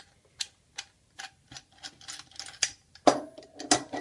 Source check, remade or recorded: recorded